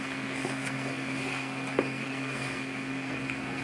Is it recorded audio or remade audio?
remade